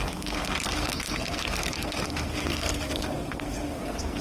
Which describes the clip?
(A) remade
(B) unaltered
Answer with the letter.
A